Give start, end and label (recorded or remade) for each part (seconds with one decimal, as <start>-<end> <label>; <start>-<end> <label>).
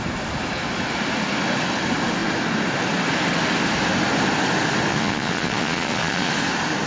0.0-4.9 recorded; 4.9-6.3 remade; 6.3-6.9 recorded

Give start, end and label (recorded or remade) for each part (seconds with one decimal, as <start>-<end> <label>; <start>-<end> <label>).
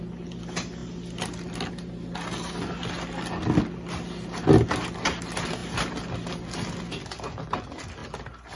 0.0-8.6 recorded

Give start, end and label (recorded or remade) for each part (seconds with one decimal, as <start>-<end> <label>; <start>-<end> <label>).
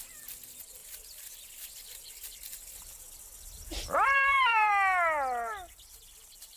0.0-0.8 recorded; 0.8-4.7 remade; 4.7-6.6 recorded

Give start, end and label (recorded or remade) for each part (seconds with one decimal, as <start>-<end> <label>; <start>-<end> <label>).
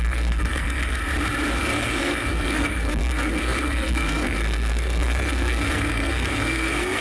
0.0-1.0 remade; 1.0-1.6 recorded; 1.6-7.0 remade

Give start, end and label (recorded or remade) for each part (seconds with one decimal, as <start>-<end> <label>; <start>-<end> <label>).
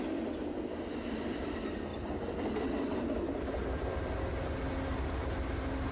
0.0-5.9 recorded